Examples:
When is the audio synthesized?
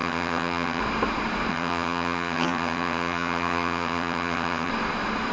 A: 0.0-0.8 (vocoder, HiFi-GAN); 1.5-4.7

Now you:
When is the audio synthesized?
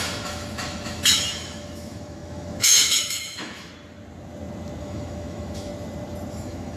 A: 0.0-3.7 (autoencoder, DAC-VAE); 4.8-5.7; 6.3-6.8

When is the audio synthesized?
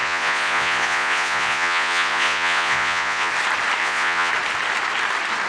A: 0.0-3.3 (vocoder, Vocos); 3.8-4.3